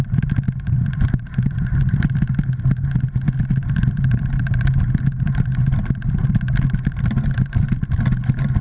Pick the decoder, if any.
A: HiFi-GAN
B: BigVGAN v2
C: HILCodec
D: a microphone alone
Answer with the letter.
D